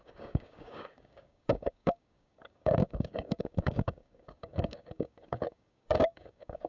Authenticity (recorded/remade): remade